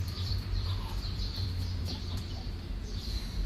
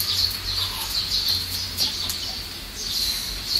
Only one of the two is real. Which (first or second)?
second